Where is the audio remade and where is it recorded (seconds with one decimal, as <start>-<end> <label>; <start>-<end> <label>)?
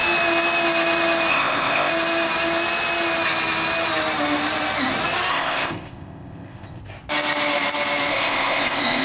0.0-1.3 recorded; 1.3-1.9 remade; 1.9-5.3 recorded; 5.3-6.8 remade; 6.8-8.1 recorded; 8.1-9.0 remade